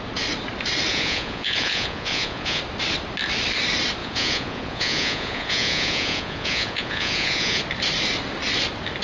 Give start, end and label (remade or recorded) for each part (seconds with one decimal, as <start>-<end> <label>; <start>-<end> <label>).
0.0-0.9 recorded; 0.9-2.6 remade; 2.6-4.0 recorded; 4.0-7.6 remade; 7.6-9.0 recorded

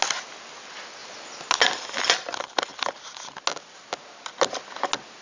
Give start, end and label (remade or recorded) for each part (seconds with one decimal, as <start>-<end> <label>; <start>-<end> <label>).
0.0-5.2 recorded

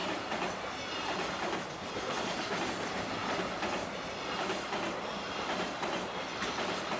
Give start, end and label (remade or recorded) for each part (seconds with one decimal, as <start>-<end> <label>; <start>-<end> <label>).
0.0-7.0 recorded

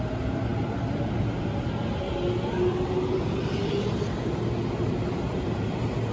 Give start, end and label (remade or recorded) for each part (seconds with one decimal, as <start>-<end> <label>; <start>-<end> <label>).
0.0-6.1 recorded

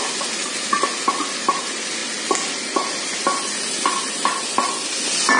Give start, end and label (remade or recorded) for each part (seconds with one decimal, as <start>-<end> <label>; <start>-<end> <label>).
0.0-5.4 recorded

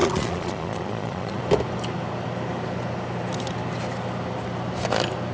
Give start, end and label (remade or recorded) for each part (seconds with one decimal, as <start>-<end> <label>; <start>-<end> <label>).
0.0-1.4 remade; 1.4-5.3 recorded